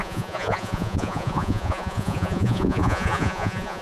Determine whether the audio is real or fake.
fake